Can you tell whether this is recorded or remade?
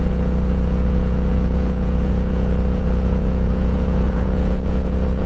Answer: remade